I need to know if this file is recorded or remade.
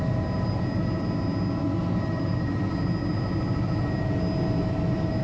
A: recorded